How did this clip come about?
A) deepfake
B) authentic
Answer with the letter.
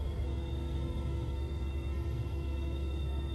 A